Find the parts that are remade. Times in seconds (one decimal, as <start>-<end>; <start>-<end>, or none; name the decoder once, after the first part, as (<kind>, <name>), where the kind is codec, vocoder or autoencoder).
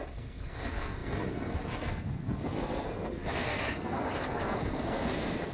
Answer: 0.0-5.5 (codec, SNAC)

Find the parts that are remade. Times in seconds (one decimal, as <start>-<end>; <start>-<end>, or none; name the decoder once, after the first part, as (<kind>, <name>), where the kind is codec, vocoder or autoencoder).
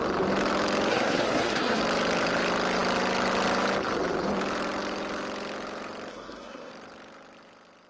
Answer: 0.9-1.8 (codec, SNAC); 6.1-6.7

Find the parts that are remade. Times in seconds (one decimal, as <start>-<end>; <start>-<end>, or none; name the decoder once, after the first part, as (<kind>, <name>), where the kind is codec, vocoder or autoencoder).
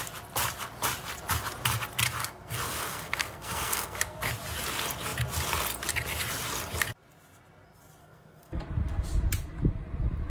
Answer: 2.2-4.3 (codec, SNAC); 8.0-8.6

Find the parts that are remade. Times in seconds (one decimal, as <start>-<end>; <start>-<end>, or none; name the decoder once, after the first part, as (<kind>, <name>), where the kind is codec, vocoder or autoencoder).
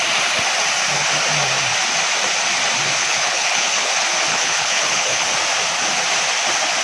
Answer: 3.0-3.9 (codec, HILCodec); 4.3-5.3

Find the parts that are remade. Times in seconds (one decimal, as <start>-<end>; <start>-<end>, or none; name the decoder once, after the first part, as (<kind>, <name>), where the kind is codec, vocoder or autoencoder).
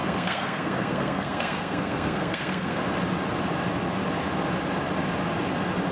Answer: 0.0-2.8 (codec, SNAC)